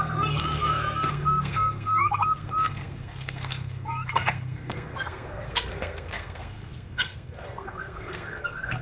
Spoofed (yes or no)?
yes